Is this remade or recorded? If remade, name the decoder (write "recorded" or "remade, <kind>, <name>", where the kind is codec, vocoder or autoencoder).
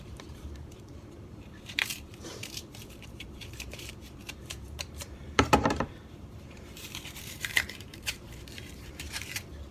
remade, vocoder, BigVGAN v2